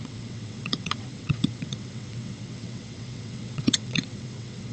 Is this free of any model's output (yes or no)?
no